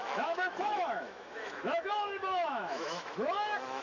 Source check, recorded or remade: remade